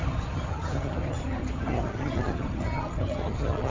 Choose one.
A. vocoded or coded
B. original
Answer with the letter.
A